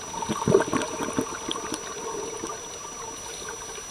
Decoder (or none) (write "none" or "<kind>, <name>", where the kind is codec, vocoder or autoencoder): none